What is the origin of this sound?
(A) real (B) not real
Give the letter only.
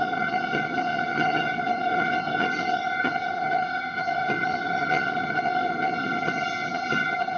B